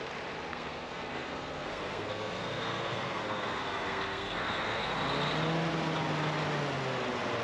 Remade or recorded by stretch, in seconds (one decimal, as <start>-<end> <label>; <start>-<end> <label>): 0.0-0.5 recorded; 0.5-4.9 remade; 4.9-7.4 recorded